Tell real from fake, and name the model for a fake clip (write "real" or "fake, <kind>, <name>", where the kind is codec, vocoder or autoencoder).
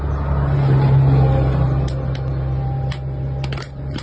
real